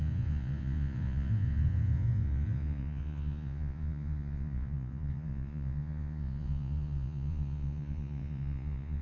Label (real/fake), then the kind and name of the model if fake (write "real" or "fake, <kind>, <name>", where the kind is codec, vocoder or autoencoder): fake, vocoder, Vocos